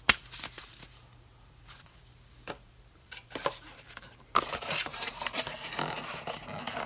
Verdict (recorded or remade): remade